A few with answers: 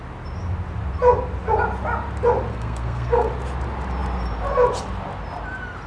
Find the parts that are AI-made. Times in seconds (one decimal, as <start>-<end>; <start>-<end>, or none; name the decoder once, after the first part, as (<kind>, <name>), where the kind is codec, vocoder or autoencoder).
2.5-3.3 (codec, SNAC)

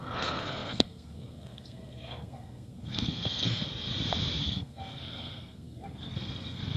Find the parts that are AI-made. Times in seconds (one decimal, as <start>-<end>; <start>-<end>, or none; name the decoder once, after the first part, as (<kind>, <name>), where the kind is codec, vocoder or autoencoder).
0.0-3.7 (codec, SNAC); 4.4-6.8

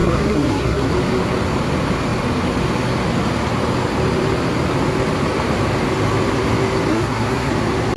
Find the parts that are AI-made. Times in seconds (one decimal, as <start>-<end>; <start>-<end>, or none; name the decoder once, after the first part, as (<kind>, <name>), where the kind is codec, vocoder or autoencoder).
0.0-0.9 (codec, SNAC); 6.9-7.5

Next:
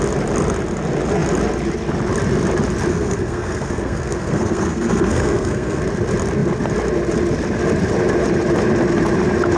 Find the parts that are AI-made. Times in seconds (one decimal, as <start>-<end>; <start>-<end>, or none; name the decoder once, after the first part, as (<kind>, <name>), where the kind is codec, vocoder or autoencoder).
2.9-5.8 (codec, SNAC)

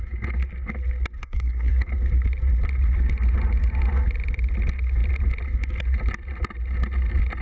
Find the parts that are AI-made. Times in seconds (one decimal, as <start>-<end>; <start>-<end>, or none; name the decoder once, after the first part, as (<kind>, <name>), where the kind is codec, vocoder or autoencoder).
1.2-1.7 (codec, SNAC)